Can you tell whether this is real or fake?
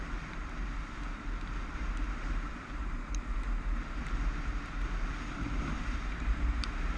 fake